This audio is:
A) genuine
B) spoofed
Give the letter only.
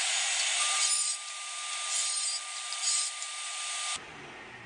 A